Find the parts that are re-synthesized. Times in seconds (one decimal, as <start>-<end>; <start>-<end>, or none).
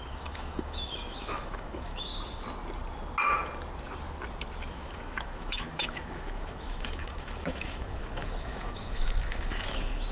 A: 0.0-2.1; 4.7-10.1